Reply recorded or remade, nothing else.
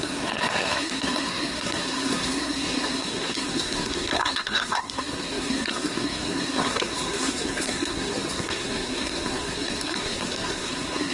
remade